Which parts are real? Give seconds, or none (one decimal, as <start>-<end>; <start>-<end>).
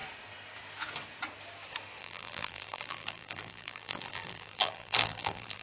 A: 0.0-2.0